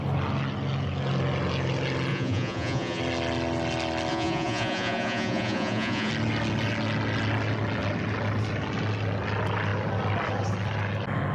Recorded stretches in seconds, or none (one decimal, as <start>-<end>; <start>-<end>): 0.0-2.1; 3.0-4.1; 6.1-11.3